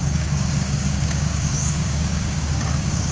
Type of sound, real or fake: fake